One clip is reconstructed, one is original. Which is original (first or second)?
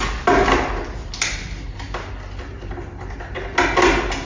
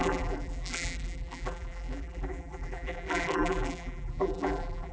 first